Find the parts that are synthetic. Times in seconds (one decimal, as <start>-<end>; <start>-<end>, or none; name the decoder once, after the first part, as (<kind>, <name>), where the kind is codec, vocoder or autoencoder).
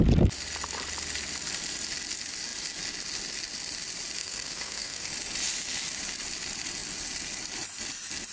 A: 4.2-5.1 (codec, SNAC)